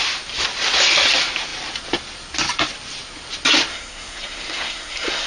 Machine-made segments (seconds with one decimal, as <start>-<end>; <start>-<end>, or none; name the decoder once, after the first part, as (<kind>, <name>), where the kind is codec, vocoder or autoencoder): 3.7-5.3 (codec, SNAC)